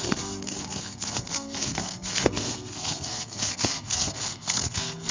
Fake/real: fake